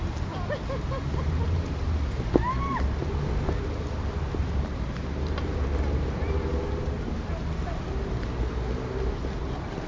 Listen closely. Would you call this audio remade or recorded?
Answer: recorded